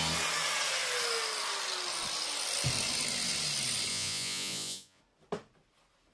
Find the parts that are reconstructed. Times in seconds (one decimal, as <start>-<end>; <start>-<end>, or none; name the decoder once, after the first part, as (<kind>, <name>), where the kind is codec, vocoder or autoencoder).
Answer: 3.9-5.0 (vocoder, Vocos)